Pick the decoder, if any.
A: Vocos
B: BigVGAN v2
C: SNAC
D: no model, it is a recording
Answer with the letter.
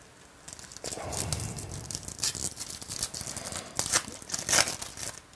D